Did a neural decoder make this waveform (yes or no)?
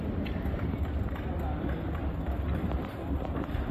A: no